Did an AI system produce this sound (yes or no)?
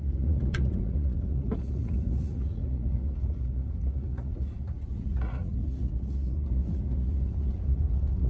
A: yes